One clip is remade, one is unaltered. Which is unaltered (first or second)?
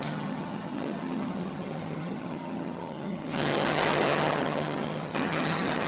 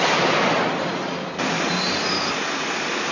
second